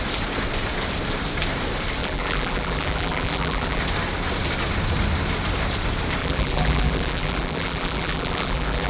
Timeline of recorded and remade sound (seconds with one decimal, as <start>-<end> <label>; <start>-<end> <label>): 0.0-2.0 recorded; 2.0-3.8 remade; 3.8-6.2 recorded; 6.2-8.9 remade